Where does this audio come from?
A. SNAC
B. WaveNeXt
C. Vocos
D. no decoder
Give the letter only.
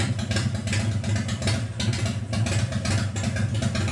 D